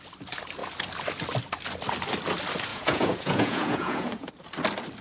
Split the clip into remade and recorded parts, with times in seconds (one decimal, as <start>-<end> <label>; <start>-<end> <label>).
0.0-2.7 recorded; 2.7-4.3 remade; 4.3-5.0 recorded